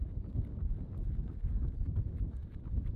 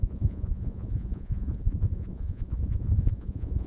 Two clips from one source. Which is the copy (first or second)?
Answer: second